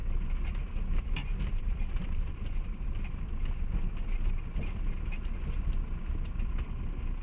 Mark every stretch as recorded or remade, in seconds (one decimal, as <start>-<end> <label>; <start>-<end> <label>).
0.0-7.2 recorded